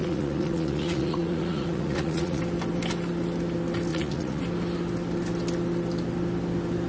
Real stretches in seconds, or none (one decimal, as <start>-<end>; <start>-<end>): 2.4-3.9; 4.4-6.9